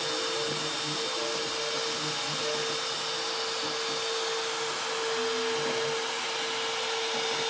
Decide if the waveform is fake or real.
real